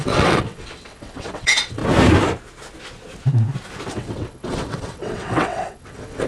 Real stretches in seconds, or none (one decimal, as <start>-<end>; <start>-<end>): 1.8-3.9